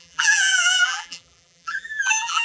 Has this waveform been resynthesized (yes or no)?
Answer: yes